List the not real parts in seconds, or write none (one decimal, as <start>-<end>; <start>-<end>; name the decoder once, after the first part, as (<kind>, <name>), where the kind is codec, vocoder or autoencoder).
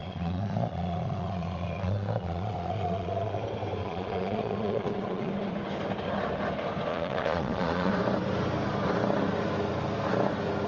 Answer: 0.0-3.4 (vocoder, Vocos); 3.8-5.3; 6.9-7.9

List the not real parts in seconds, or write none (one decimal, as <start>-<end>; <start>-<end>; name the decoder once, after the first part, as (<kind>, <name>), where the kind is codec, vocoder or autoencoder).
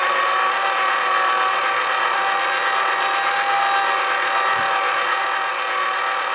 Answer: none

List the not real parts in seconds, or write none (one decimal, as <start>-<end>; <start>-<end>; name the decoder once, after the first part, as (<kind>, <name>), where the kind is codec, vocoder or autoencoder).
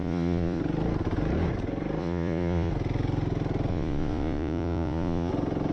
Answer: 0.0-0.6 (vocoder, Vocos); 2.0-2.7; 3.7-5.3